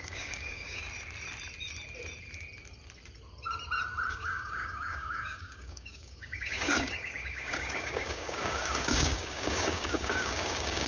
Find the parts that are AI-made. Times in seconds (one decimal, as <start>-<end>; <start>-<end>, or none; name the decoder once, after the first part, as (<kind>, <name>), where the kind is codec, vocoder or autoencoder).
0.0-0.8 (codec, DAC); 4.1-10.9